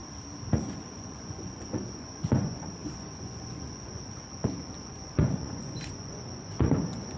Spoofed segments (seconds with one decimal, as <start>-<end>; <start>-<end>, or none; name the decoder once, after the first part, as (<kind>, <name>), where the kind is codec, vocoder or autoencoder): 0.5-7.2 (vocoder, Vocos)